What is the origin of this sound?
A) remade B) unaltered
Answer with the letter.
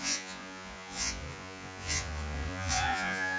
A